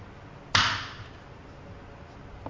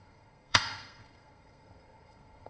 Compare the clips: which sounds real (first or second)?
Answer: first